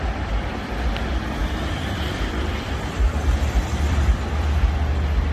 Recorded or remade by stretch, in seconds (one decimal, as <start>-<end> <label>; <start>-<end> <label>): 0.0-1.4 recorded; 1.4-4.6 remade; 4.6-5.3 recorded